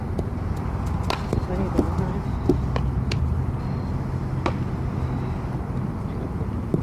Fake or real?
real